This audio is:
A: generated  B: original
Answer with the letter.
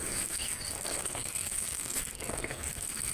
A